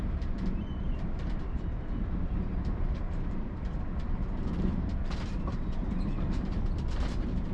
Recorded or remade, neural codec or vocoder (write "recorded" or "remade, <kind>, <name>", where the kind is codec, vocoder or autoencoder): remade, vocoder, BigVGAN v2